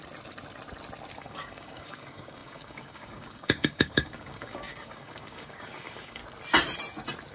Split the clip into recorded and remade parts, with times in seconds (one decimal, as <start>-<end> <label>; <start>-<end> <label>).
0.0-1.2 recorded; 1.2-6.2 remade; 6.2-7.3 recorded